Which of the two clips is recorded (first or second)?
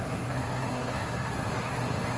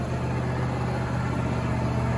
second